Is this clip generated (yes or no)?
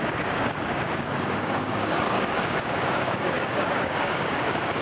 yes